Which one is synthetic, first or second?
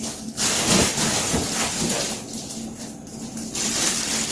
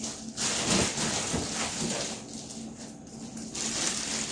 first